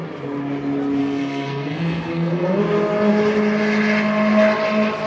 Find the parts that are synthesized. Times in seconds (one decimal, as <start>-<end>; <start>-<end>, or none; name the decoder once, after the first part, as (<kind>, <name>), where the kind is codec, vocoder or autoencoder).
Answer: 1.0-2.6 (codec, SNAC)